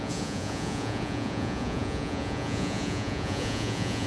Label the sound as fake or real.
fake